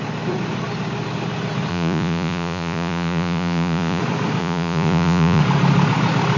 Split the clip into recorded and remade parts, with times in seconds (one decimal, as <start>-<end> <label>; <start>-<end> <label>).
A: 0.0-1.7 recorded; 1.7-4.0 remade; 4.0-4.4 recorded; 4.4-5.4 remade; 5.4-6.4 recorded